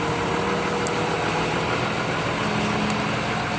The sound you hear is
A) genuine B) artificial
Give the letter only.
A